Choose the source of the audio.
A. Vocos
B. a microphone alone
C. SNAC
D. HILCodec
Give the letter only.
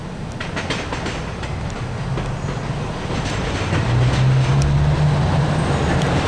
B